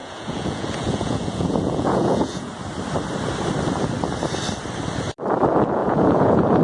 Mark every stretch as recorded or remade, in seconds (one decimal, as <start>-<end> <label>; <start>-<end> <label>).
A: 0.0-2.5 remade; 2.5-5.8 recorded; 5.8-6.6 remade